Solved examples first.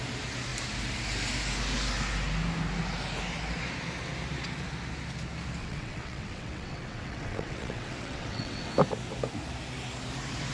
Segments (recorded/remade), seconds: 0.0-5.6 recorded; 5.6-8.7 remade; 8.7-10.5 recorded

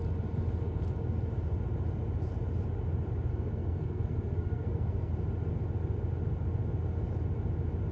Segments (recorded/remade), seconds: 0.0-3.3 recorded; 3.3-5.1 remade; 5.1-7.9 recorded

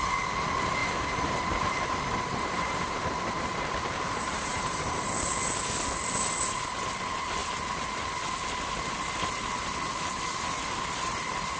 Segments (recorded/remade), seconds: 0.0-0.8 recorded; 0.8-5.1 remade; 5.1-11.6 recorded

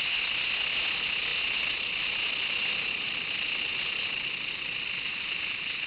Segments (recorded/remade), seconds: 0.0-5.9 recorded

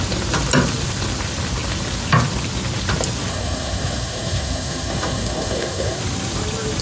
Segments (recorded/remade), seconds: 0.0-3.3 recorded; 3.3-6.0 remade; 6.0-6.8 recorded